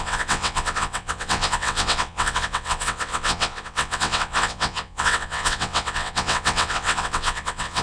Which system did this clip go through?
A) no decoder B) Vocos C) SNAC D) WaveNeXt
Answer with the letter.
D